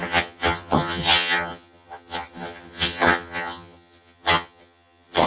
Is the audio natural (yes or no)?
no